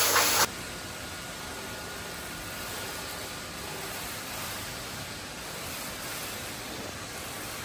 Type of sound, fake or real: real